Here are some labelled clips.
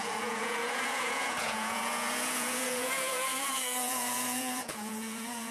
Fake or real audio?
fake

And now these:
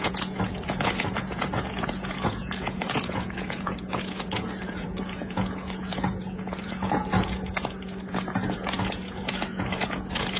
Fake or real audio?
fake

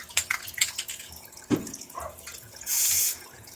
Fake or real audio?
fake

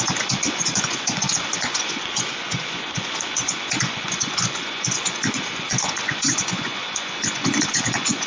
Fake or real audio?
fake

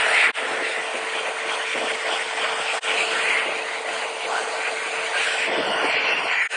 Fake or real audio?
real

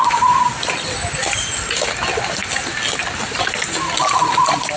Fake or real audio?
real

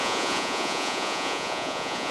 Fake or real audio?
fake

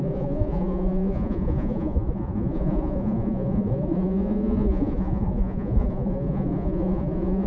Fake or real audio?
fake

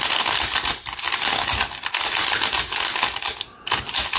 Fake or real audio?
real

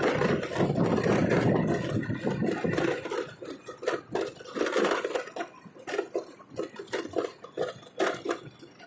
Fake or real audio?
real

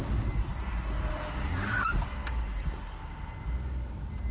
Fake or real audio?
real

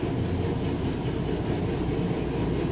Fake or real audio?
real